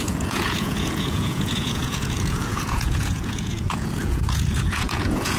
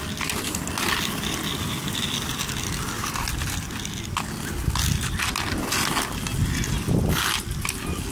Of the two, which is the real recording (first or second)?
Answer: second